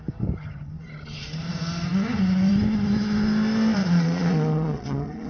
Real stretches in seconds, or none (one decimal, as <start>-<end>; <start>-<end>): 0.0-3.8